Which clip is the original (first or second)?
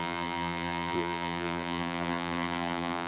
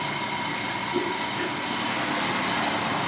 second